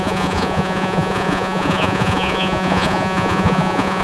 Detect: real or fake fake